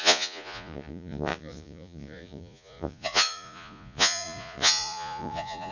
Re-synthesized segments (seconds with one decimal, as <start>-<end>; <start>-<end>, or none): 0.0-5.7